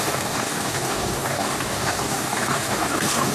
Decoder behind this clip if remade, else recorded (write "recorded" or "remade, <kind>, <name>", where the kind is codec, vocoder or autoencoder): remade, codec, DAC